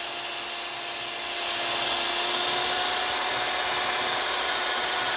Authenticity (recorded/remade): recorded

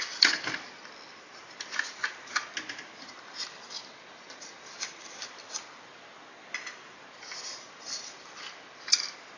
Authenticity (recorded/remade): recorded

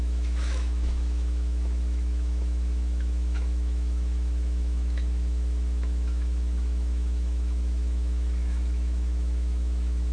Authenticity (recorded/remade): remade